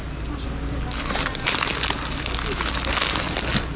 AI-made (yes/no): no